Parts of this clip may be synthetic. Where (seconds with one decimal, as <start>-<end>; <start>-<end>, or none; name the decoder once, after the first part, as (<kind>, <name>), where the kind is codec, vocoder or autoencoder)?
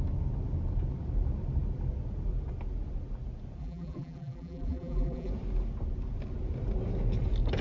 3.6-5.3 (vocoder, BigVGAN v2)